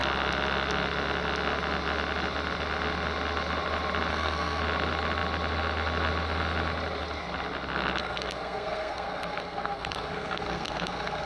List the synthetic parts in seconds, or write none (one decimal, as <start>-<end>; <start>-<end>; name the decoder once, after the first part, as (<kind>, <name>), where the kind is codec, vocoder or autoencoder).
4.1-4.6 (codec, SNAC); 8.0-11.3